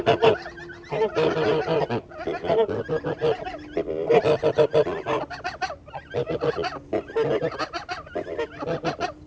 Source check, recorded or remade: recorded